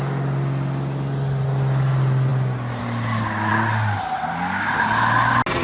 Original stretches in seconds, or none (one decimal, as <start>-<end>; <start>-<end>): 0.0-5.6